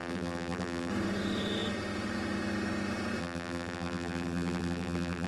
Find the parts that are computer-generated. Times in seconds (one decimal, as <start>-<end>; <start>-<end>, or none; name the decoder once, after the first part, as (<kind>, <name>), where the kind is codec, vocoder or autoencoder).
0.0-0.9 (vocoder, BigVGAN v2); 3.2-5.3